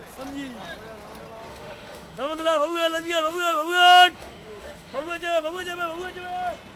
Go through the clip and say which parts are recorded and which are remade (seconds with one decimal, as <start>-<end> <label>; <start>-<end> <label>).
0.0-1.5 recorded; 1.5-5.6 remade; 5.6-6.8 recorded